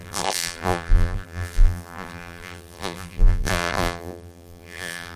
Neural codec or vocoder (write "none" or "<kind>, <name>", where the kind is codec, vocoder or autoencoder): vocoder, BigVGAN v2